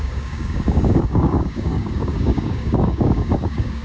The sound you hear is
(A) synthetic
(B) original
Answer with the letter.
A